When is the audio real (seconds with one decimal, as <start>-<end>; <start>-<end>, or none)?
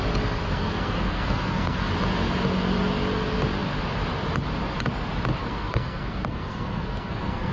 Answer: 0.0-0.4; 1.9-5.4